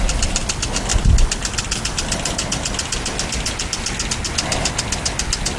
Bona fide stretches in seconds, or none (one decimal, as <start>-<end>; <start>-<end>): 0.0-5.6